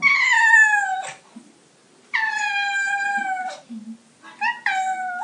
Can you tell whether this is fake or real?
real